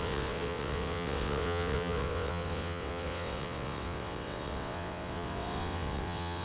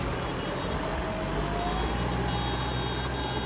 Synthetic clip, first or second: first